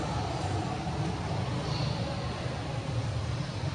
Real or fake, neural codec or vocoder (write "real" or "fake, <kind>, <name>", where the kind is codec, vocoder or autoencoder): real